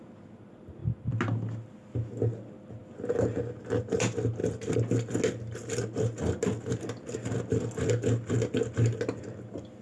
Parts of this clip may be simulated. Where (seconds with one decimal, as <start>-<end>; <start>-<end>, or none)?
none